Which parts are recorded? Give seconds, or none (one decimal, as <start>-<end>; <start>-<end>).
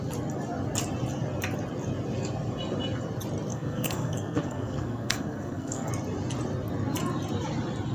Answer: 0.0-3.5; 5.9-7.9